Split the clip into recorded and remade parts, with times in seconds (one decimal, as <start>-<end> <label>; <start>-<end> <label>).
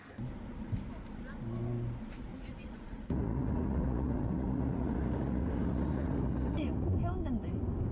0.0-2.3 recorded; 2.3-7.0 remade; 7.0-7.9 recorded